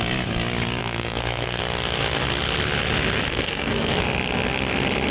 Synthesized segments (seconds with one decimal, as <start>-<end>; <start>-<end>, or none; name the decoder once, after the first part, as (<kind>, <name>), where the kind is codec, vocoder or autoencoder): 0.8-1.6 (codec, SNAC); 3.2-3.9